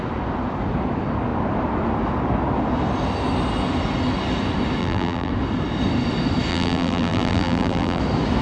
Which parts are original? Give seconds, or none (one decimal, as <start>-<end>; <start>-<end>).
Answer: 0.0-4.8; 5.3-6.5; 8.0-8.4